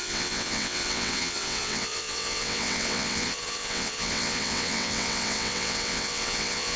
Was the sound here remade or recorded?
remade